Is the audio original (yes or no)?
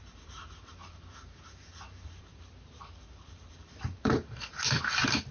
no